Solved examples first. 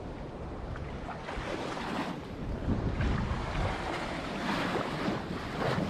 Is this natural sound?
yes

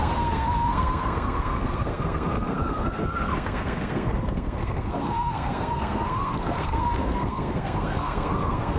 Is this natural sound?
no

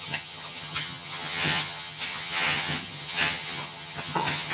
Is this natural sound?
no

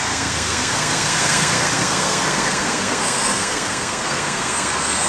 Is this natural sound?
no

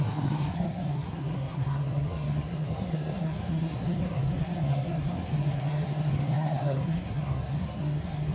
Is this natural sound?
no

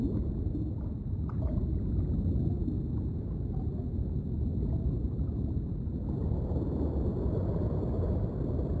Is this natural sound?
yes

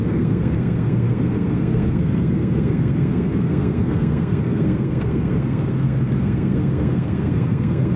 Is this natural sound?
no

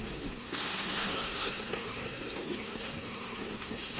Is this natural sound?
no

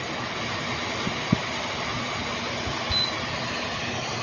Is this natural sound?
yes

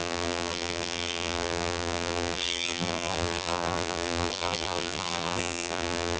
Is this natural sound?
no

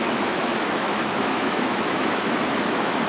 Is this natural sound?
no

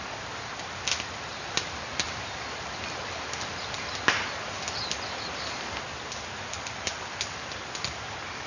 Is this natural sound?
yes